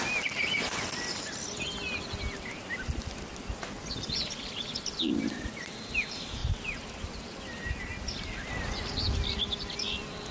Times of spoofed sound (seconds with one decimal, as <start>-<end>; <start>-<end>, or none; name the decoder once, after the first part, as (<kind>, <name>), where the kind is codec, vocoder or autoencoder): 6.4-7.6 (vocoder, BigVGAN v2)